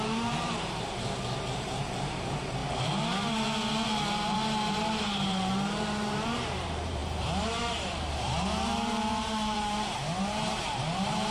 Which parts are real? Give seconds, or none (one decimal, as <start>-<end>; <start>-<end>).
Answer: 2.6-4.7